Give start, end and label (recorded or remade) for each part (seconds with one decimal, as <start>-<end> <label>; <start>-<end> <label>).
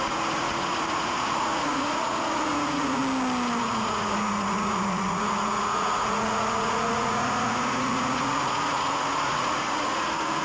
0.0-3.0 remade; 3.0-3.6 recorded; 3.6-10.4 remade